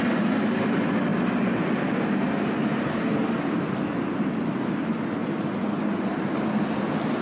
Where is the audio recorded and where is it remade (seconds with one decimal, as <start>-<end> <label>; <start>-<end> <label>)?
0.0-7.2 recorded